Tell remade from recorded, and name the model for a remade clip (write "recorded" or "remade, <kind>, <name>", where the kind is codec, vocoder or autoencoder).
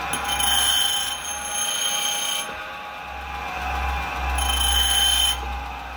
recorded